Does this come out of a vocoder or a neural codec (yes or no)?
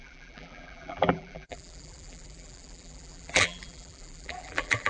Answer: yes